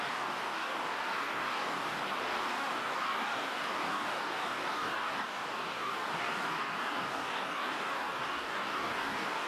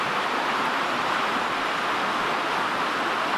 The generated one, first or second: first